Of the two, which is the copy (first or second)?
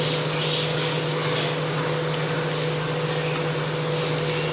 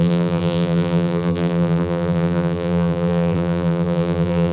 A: second